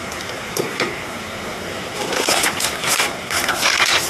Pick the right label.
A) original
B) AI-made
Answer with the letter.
B